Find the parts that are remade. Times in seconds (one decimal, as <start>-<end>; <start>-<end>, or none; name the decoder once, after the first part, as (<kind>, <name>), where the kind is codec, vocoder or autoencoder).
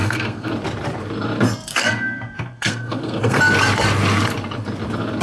0.0-0.5 (codec, SNAC); 1.7-3.4